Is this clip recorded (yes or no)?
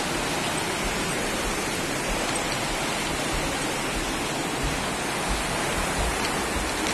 yes